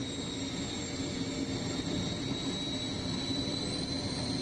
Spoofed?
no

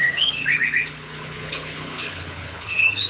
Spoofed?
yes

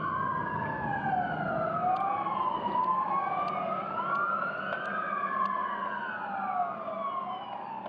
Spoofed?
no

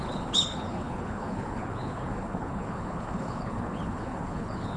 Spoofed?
yes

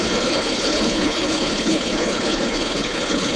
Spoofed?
yes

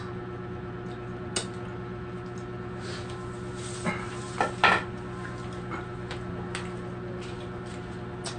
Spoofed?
no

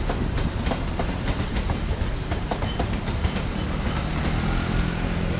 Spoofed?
no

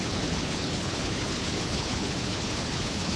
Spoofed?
yes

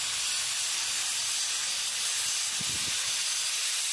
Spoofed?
no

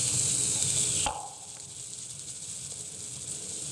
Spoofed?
no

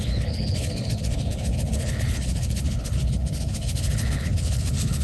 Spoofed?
yes